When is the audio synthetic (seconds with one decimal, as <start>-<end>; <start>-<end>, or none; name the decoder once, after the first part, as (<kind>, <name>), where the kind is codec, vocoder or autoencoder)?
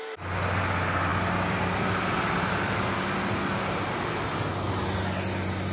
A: 1.1-4.5 (vocoder, BigVGAN v2)